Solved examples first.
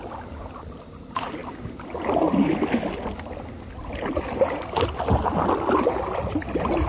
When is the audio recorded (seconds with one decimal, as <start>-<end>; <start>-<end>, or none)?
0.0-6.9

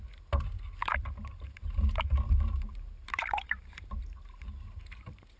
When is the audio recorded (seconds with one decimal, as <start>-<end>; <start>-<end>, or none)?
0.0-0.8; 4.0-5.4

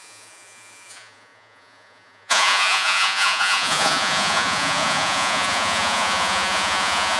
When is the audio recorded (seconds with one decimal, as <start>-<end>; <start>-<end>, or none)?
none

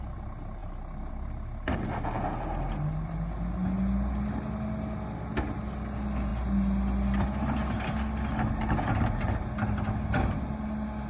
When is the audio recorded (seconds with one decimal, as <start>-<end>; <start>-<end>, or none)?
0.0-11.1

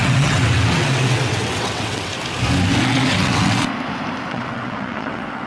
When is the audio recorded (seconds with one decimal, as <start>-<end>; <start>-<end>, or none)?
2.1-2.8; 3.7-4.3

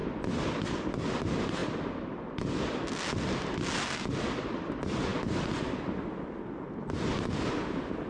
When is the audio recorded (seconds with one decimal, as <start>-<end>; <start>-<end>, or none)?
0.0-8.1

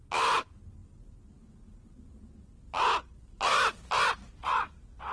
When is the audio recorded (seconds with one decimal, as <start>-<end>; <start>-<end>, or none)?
0.0-4.4